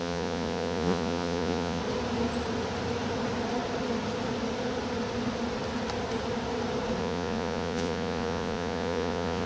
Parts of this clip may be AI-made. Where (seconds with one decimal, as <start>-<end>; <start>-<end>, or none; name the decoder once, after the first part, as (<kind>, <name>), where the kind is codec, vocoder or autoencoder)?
0.0-1.8 (vocoder, Vocos); 7.0-9.5